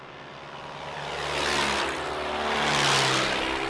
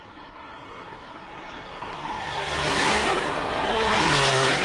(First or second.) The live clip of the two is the first